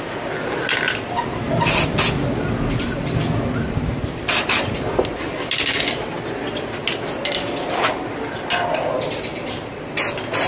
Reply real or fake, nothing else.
real